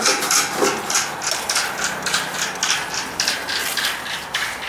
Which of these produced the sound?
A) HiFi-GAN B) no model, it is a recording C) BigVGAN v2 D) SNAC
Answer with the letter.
B